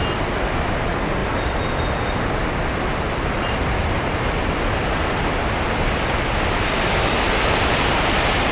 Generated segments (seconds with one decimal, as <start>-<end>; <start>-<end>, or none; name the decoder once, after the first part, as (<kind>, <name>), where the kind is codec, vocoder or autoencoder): none